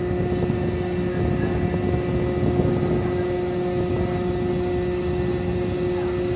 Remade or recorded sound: recorded